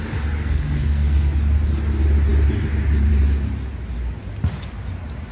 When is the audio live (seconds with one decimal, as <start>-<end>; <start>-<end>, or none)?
0.0-0.4; 1.4-5.3